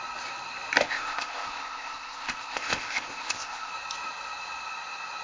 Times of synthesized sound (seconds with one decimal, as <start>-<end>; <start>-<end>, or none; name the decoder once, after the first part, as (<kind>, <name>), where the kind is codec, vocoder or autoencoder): 0.8-3.7 (codec, ZipCodec)